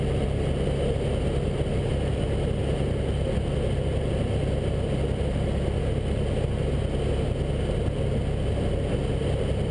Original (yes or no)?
yes